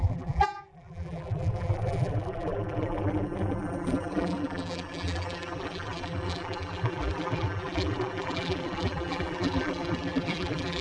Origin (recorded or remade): remade